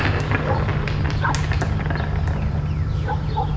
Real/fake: real